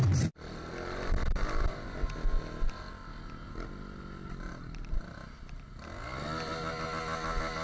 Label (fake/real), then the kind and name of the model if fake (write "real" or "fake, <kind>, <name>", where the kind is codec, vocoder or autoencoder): real